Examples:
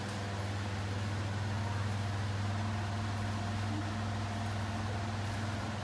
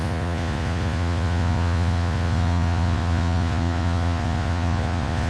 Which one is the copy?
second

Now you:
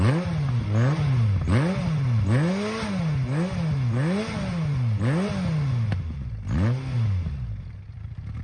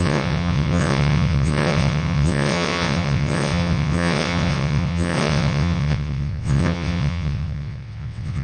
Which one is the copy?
second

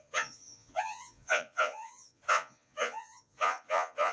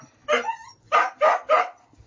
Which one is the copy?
first